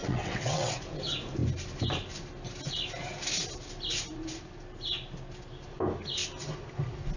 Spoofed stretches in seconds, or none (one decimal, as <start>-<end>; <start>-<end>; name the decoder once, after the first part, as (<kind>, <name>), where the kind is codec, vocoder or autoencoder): 0.0-0.7 (vocoder, WaveNeXt)